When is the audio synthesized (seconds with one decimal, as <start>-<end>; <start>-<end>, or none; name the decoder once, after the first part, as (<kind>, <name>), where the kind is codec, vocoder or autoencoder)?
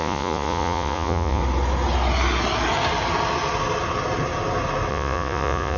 0.0-1.4 (vocoder, Vocos); 4.9-5.8